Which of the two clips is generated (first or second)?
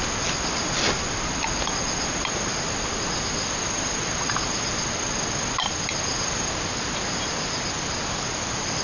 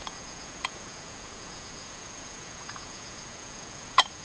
second